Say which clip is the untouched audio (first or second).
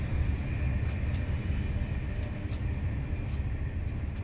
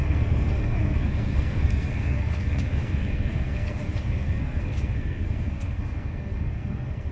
first